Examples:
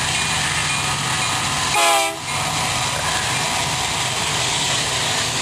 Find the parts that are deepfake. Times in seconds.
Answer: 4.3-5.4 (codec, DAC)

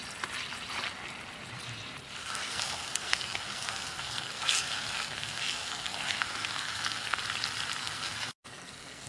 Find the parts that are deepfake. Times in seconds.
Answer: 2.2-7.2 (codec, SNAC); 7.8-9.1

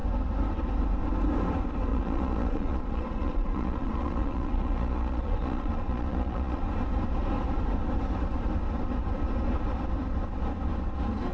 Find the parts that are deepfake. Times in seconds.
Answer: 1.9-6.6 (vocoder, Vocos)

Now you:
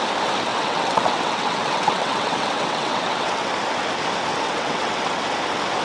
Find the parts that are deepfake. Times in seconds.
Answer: 0.5-3.5 (vocoder, WaveNeXt); 4.3-5.2

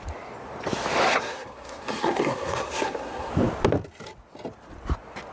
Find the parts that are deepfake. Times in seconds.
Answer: 1.1-3.3 (codec, SNAC)

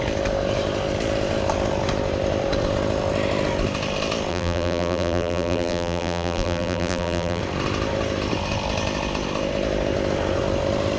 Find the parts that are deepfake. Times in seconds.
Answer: 4.3-7.4 (vocoder, BigVGAN v2)

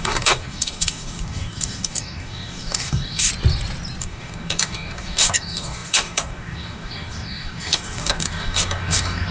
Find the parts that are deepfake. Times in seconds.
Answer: 0.0-3.3 (codec, DAC); 4.0-9.3

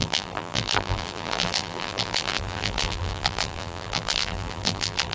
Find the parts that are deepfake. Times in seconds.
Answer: 0.0-5.1 (vocoder, BigVGAN v2)